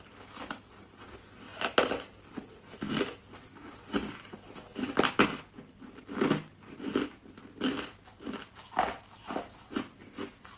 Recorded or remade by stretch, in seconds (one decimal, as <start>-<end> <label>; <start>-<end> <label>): 0.0-10.6 recorded